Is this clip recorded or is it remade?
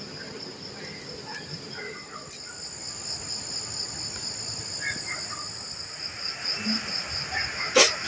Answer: recorded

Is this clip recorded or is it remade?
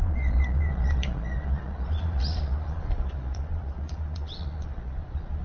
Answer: remade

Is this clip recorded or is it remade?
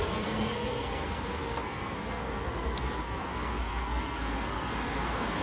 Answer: remade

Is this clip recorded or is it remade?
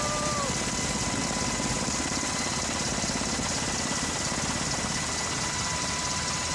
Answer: recorded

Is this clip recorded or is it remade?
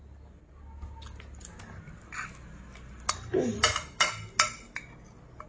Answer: recorded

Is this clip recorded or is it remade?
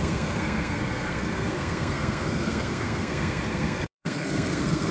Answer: remade